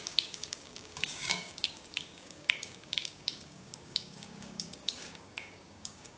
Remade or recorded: remade